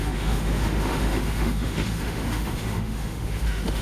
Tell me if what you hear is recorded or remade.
remade